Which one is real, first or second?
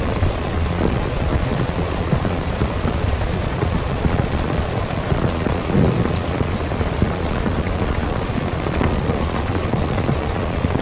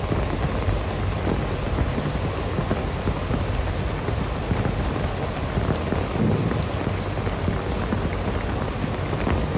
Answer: second